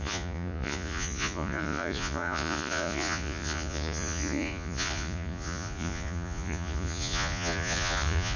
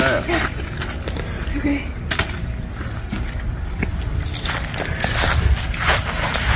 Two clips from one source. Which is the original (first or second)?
second